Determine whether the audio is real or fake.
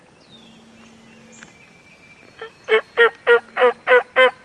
real